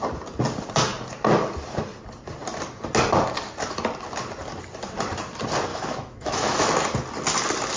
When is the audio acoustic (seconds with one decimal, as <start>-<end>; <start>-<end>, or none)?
0.0-5.7; 6.7-7.8